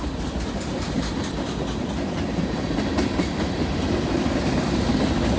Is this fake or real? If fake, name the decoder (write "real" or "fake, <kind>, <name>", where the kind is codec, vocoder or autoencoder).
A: real